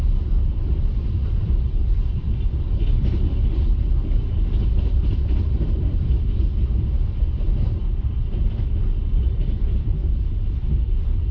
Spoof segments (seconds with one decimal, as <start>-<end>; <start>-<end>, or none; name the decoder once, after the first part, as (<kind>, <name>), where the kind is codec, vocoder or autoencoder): 0.0-11.3 (vocoder, BigVGAN v2)